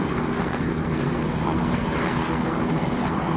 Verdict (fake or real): fake